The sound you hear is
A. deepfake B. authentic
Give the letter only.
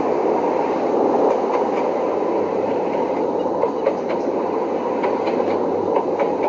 B